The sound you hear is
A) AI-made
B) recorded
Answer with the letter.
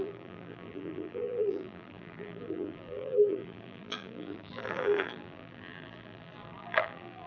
A